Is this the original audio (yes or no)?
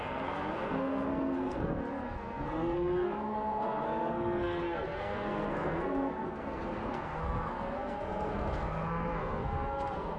no